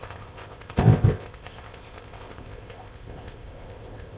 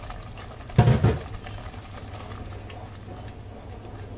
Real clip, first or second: second